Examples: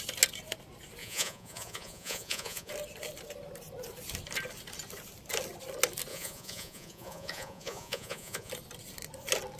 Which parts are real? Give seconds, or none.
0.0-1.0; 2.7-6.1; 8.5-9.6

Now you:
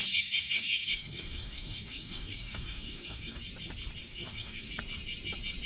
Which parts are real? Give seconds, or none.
3.4-4.0; 4.7-5.7

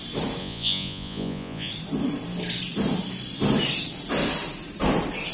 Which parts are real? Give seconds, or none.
0.0-0.4; 1.7-5.3

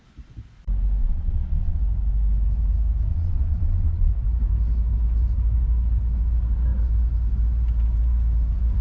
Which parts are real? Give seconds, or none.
0.0-1.0; 1.8-3.1; 4.1-8.8

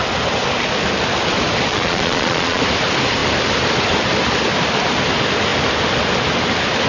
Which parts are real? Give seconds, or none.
0.0-1.7; 2.6-6.9

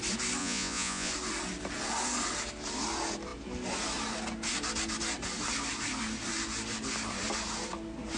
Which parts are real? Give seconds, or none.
0.0-0.4; 1.1-8.2

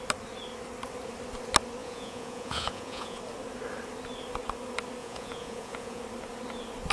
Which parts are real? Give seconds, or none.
0.0-1.8; 3.2-5.0; 6.0-6.9